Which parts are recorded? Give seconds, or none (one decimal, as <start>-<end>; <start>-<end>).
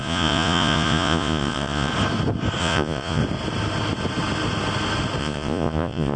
1.9-2.6; 3.2-5.2